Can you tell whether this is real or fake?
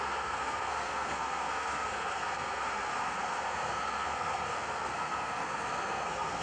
fake